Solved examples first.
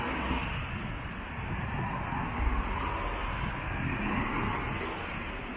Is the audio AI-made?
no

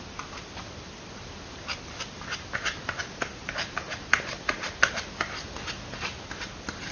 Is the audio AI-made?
no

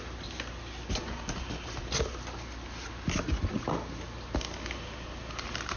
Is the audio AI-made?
no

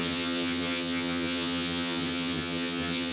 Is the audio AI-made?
yes